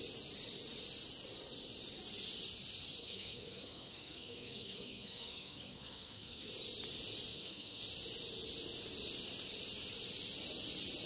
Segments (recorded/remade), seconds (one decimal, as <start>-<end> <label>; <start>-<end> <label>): 0.0-3.0 recorded; 3.0-6.5 remade; 6.5-7.3 recorded; 7.3-7.8 remade; 7.8-11.1 recorded